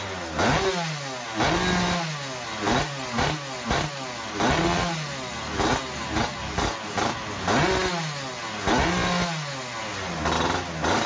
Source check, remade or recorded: recorded